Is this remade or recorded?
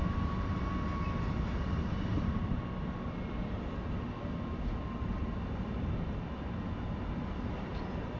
recorded